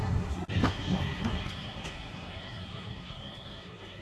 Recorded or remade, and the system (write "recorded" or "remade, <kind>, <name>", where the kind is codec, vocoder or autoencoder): remade, codec, SNAC